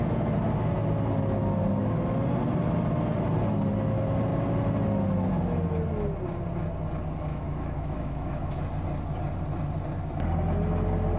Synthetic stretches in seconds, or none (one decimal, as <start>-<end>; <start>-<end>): 7.3-8.6